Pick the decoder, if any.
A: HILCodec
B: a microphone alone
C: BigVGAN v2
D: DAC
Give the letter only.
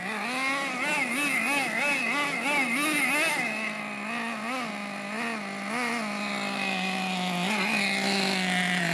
B